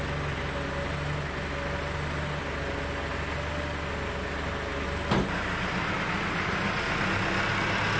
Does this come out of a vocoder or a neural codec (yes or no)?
no